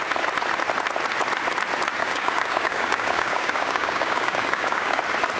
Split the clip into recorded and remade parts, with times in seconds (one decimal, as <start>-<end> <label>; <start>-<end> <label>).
0.0-2.0 recorded; 2.0-5.0 remade; 5.0-5.4 recorded